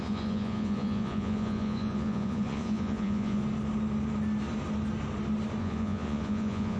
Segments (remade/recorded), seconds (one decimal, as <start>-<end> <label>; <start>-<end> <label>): 0.0-3.4 remade; 3.4-5.6 recorded; 5.6-6.8 remade